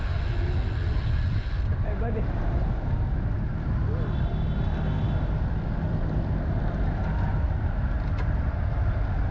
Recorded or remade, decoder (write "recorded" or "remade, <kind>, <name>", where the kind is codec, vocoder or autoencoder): recorded